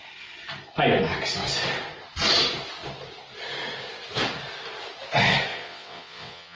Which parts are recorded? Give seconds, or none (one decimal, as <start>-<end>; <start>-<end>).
0.0-5.5